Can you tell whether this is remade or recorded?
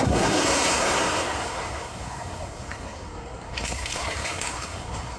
remade